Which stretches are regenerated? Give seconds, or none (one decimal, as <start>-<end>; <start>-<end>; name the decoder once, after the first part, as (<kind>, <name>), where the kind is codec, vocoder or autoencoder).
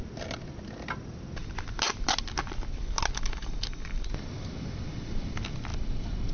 none